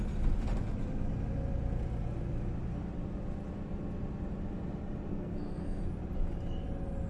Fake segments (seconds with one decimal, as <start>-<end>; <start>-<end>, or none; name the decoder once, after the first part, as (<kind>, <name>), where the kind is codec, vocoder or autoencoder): 5.1-5.8 (codec, SNAC)

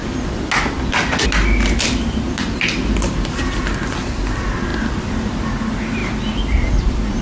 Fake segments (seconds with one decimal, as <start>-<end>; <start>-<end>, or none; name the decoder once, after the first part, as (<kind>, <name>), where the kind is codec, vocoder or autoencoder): none

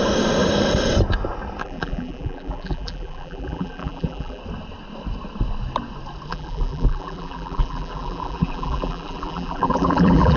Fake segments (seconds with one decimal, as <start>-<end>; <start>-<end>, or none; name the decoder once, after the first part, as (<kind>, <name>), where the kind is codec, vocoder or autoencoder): 1.6-4.4 (vocoder, BigVGAN v2); 6.3-10.4

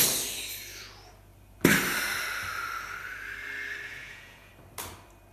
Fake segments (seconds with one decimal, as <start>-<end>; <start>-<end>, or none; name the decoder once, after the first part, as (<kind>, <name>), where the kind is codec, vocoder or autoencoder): 3.9-4.5 (vocoder, Vocos)

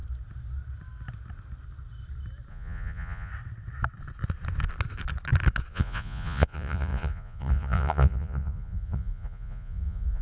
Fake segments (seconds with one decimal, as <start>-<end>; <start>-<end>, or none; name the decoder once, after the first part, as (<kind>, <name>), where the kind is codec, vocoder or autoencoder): 2.5-3.3 (vocoder, Vocos); 5.7-10.2

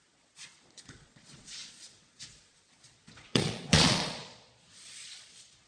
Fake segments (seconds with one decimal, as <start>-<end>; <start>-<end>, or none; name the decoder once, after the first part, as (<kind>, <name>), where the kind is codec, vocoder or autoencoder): 0.0-5.7 (vocoder, Vocos)